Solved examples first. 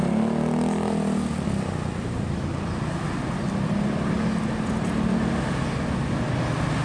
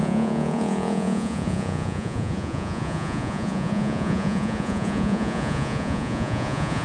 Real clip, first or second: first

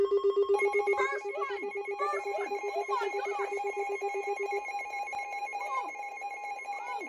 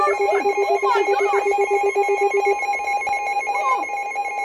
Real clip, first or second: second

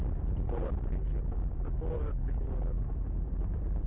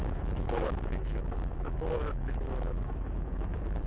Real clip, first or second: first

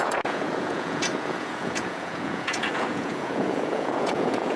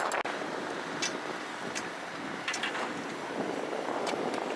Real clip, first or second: second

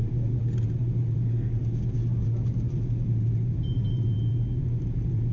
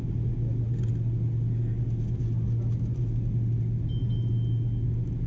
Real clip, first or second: second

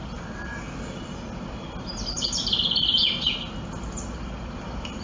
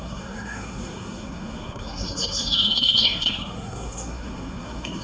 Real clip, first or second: first